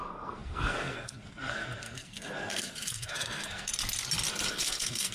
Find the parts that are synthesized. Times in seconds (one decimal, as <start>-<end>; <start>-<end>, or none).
0.0-3.7; 4.5-5.1